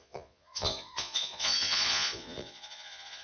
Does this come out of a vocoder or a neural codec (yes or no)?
yes